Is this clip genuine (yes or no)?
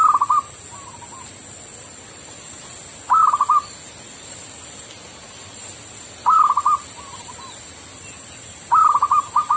yes